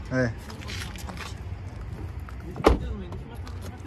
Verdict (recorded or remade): recorded